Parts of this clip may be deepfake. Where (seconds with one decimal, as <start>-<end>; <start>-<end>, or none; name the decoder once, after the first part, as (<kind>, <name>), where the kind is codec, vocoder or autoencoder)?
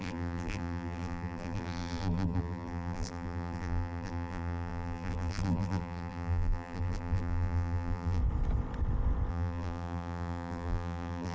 0.0-8.2 (vocoder, BigVGAN v2); 9.3-11.3